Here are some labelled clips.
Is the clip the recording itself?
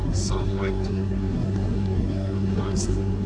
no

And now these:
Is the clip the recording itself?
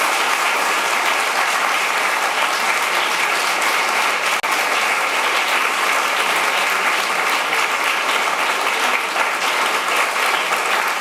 yes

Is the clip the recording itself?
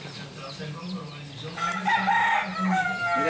yes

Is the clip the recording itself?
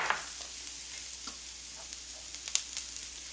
yes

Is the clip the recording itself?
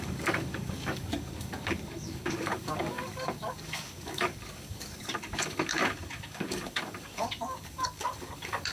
no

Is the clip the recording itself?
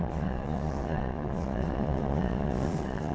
no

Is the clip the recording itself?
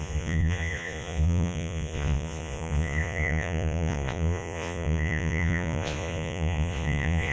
no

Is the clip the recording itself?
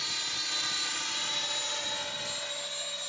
yes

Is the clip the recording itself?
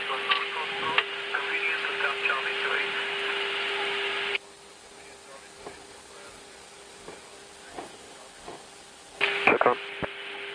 yes